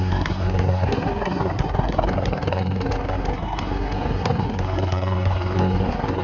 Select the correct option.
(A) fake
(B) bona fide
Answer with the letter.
A